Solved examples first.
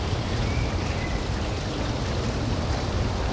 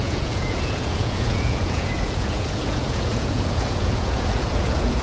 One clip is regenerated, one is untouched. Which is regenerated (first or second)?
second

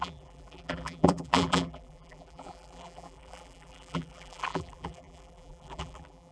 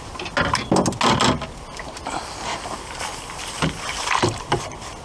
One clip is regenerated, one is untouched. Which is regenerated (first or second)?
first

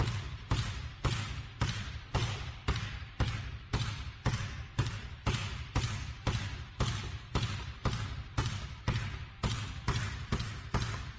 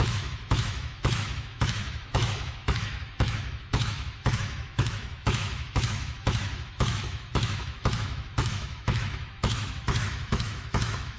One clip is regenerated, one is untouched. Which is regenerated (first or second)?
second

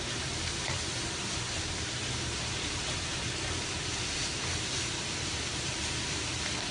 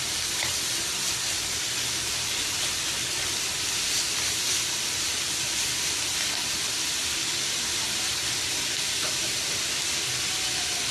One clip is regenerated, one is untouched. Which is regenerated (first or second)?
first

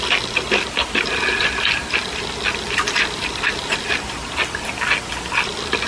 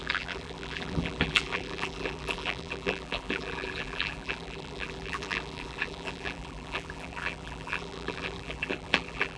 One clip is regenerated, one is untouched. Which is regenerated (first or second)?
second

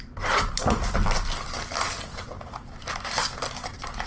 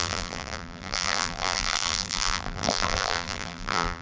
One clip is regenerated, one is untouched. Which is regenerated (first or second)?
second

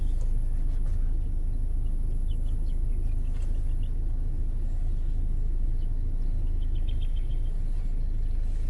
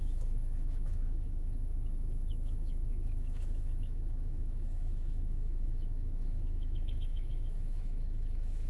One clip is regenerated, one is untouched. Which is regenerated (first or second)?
second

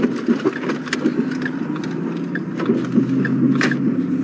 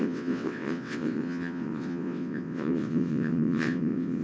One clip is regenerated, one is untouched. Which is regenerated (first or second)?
second